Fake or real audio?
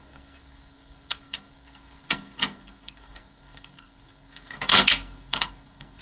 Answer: fake